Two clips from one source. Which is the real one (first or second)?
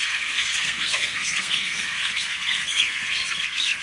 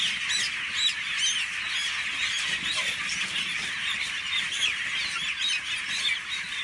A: second